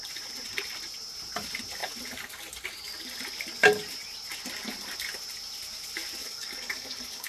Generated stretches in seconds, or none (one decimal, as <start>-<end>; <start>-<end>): 6.2-7.3